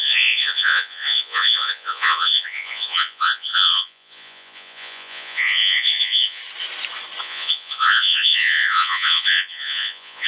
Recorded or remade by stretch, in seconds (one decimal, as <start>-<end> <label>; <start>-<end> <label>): 0.0-6.4 remade; 6.4-7.2 recorded; 7.2-10.3 remade